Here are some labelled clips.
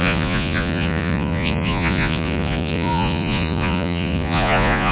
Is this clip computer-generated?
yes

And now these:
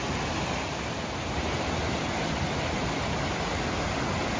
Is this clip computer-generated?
no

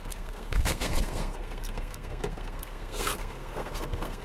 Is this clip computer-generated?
yes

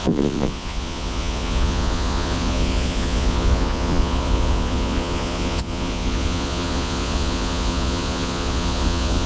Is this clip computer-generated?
yes